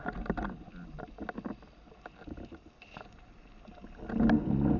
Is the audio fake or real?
real